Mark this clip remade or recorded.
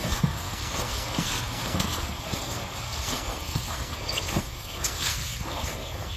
remade